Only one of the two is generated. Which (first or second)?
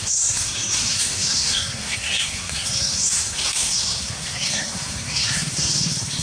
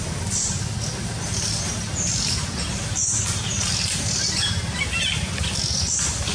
first